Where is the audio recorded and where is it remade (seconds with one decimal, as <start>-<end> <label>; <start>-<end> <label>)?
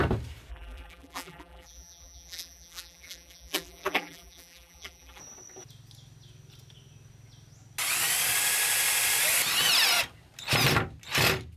0.0-0.5 recorded; 0.5-5.2 remade; 5.2-11.6 recorded